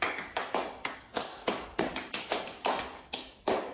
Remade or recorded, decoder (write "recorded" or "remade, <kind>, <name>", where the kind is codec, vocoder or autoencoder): remade, codec, DAC